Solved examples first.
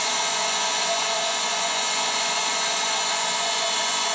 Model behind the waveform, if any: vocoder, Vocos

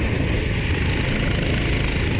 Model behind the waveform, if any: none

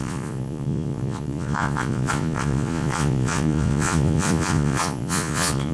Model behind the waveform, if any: vocoder, Vocos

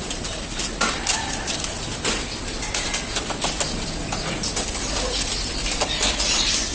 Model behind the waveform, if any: none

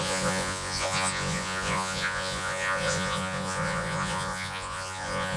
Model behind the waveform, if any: vocoder, Vocos